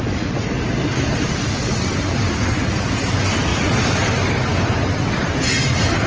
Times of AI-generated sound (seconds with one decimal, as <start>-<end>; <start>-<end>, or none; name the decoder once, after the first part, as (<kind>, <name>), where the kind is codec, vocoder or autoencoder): none